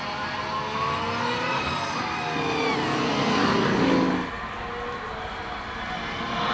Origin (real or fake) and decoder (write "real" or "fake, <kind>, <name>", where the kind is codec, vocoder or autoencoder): real